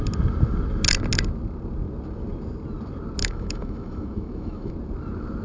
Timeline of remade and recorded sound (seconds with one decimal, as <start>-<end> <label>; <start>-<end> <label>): 0.0-3.2 recorded; 3.2-4.7 remade; 4.7-5.4 recorded

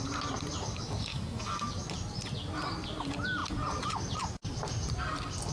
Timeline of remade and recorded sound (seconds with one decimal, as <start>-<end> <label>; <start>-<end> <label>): 0.0-1.1 recorded; 1.1-1.7 remade; 1.7-5.5 recorded

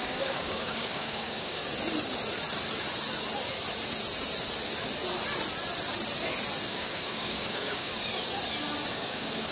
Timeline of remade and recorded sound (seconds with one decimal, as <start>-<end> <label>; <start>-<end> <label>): 0.0-1.6 remade; 1.6-6.7 recorded; 6.7-7.9 remade; 7.9-8.9 recorded; 8.9-9.5 remade

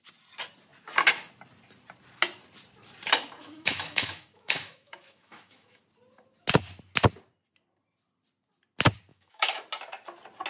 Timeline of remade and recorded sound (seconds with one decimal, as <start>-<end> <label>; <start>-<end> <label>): 0.0-3.4 recorded; 3.4-5.8 remade; 5.8-9.1 recorded; 9.1-9.6 remade; 9.6-10.5 recorded

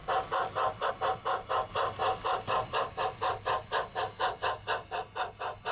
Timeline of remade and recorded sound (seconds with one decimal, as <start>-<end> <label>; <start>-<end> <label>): 0.0-5.7 recorded